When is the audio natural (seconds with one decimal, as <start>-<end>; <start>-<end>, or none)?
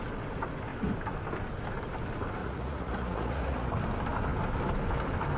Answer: 0.0-2.4; 3.7-5.4